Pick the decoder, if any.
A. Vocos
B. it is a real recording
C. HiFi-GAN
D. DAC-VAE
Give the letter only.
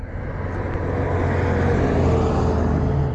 B